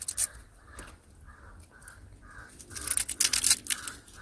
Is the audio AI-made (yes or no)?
no